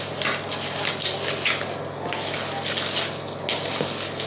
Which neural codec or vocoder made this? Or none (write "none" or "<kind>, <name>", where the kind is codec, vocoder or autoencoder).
none